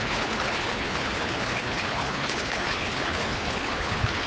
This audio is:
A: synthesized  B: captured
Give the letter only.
A